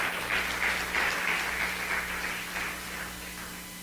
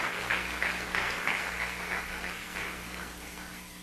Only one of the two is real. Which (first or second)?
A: first